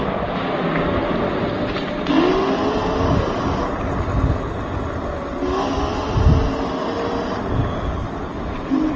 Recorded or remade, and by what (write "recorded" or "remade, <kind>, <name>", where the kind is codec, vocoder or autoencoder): recorded